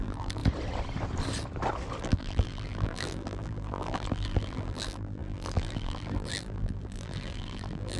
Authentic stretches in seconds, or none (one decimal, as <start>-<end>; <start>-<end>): 0.4-2.0